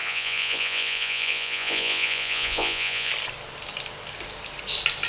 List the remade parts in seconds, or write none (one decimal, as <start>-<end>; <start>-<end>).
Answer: 0.0-3.1